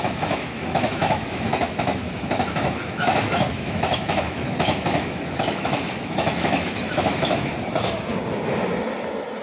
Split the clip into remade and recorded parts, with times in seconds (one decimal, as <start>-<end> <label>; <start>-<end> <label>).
0.0-7.5 remade; 7.5-9.4 recorded